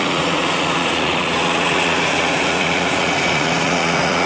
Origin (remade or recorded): remade